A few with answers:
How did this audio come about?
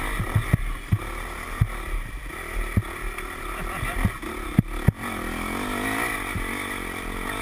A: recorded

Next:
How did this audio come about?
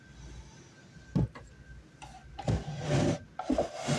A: recorded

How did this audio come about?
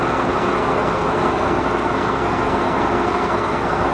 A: remade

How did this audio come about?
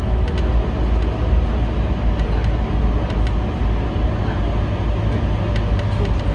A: recorded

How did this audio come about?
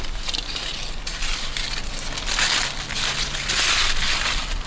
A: recorded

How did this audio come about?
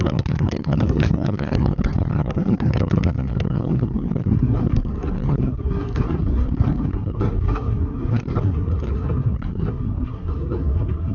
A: remade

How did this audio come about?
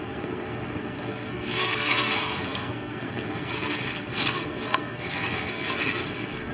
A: remade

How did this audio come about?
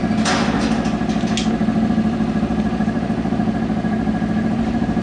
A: recorded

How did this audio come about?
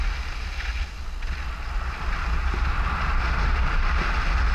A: recorded